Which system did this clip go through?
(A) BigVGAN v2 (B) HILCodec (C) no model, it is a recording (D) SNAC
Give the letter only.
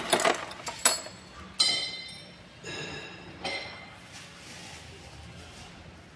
C